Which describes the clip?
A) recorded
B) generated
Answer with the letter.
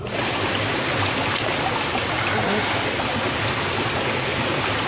A